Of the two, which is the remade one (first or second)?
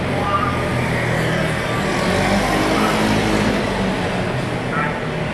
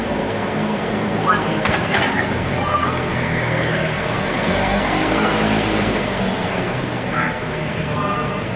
second